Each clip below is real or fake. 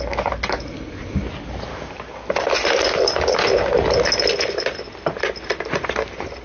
real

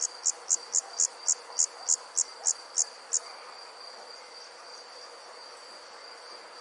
real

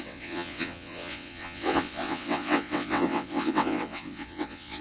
fake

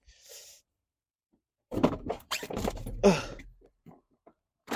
fake